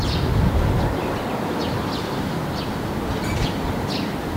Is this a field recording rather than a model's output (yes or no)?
yes